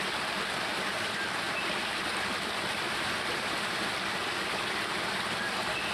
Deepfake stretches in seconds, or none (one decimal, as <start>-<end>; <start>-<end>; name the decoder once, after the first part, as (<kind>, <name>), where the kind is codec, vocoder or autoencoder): 0.7-4.2 (vocoder, BigVGAN v2)